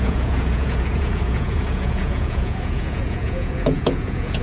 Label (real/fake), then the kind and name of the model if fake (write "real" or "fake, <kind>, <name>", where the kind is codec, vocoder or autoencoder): fake, vocoder, Vocos